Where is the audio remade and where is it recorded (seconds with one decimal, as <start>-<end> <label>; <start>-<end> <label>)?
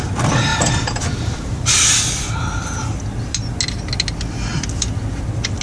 0.0-0.5 recorded; 0.5-2.4 remade; 2.4-4.5 recorded; 4.5-5.6 remade